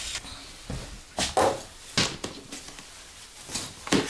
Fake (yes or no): no